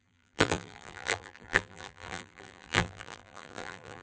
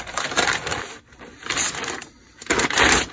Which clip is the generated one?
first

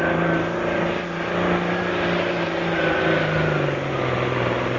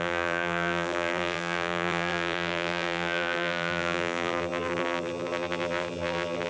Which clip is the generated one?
second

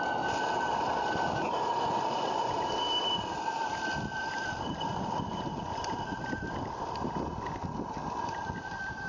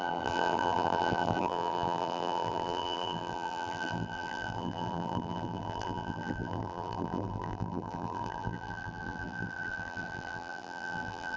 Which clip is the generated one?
second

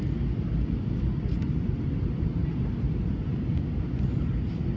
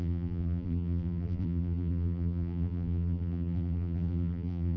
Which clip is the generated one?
second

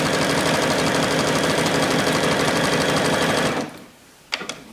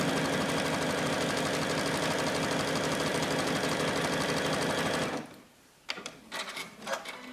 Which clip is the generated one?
first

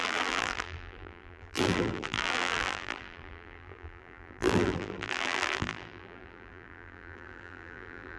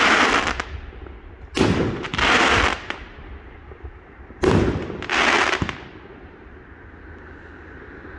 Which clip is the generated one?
first